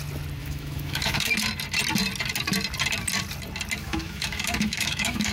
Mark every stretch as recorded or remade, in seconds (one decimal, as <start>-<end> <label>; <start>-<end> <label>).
0.0-0.4 recorded; 0.4-1.3 remade; 1.3-3.8 recorded; 3.8-5.3 remade